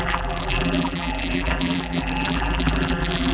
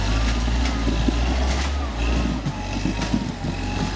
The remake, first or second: first